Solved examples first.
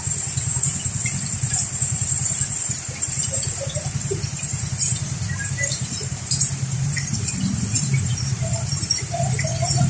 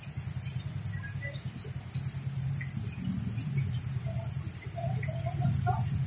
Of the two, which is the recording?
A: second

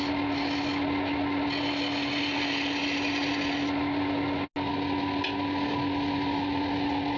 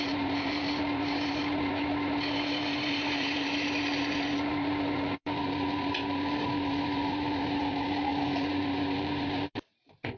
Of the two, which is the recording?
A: first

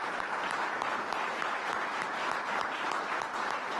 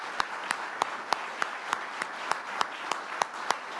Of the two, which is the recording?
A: second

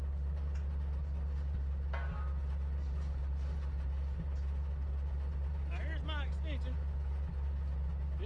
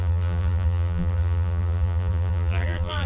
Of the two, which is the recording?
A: first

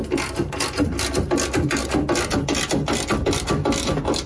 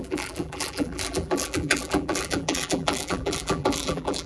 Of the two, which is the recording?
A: first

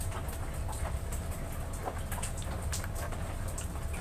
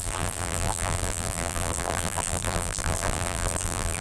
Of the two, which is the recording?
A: first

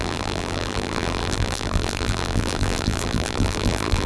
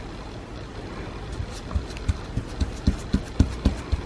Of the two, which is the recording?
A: second